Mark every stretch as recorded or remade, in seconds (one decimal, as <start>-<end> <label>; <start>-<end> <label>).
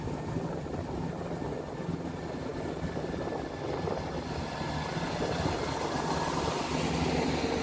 0.0-7.6 recorded